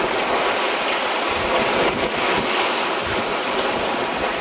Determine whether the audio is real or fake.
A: real